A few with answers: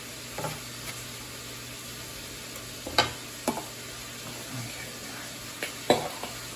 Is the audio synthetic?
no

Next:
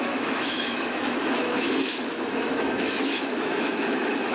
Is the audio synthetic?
yes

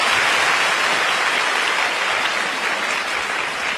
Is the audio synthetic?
no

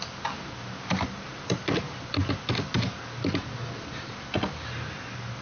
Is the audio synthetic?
no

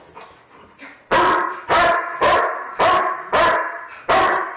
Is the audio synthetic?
no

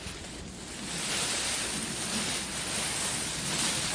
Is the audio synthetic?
no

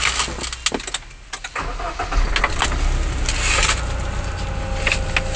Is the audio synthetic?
no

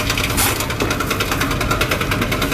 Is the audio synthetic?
no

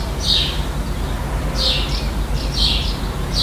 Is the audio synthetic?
no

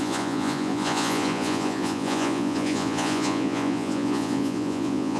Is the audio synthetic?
yes